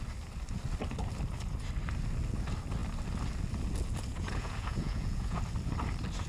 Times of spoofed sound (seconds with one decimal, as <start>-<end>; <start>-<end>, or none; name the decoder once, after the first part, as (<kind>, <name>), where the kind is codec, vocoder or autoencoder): 4.1-5.4 (vocoder, Vocos)